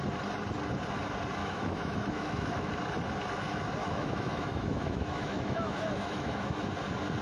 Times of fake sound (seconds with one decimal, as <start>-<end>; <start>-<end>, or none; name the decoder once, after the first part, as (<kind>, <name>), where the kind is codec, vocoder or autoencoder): 1.4-2.7 (autoencoder, DAC-VAE); 3.8-6.7